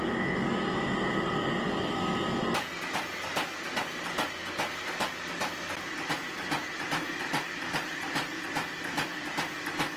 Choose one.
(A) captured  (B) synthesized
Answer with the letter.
A